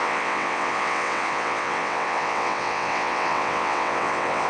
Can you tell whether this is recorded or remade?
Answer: remade